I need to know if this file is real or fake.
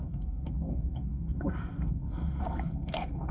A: fake